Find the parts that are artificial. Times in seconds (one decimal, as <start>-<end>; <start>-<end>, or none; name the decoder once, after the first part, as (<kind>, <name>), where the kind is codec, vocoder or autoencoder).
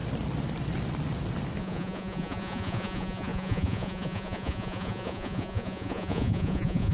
1.6-6.9 (vocoder, Vocos)